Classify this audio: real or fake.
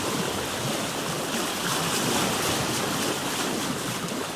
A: real